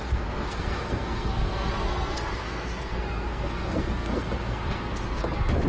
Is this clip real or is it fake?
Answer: fake